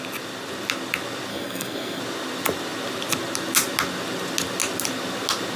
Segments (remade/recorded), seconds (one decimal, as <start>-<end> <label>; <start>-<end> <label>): 0.0-1.3 recorded; 1.3-2.0 remade; 2.0-5.6 recorded